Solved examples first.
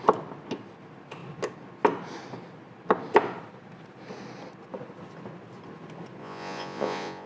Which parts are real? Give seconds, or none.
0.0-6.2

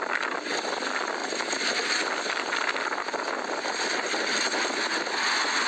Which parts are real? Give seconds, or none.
0.0-5.7

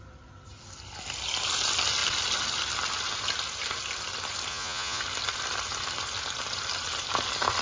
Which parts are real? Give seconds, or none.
0.0-4.5; 5.0-7.6